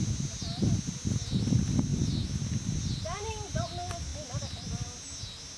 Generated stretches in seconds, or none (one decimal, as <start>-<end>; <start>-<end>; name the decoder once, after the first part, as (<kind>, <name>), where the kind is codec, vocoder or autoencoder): none